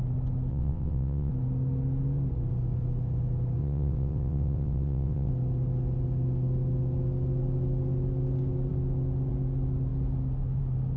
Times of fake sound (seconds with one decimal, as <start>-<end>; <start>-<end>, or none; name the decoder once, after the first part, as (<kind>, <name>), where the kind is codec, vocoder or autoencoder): 0.5-1.3 (vocoder, WaveNeXt); 3.6-5.3